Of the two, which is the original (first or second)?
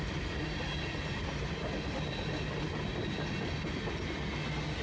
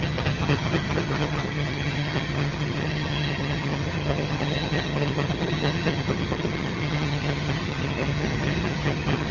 first